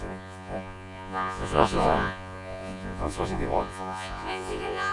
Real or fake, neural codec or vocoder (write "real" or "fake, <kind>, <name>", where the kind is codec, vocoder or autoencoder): fake, vocoder, Vocos